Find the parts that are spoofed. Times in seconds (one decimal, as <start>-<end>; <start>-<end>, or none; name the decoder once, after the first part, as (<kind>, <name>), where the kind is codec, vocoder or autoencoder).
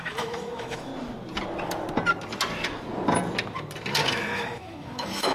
0.0-0.9 (autoencoder, DAC-VAE); 4.1-5.3